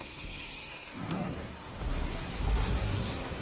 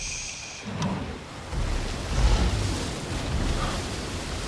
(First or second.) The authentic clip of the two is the second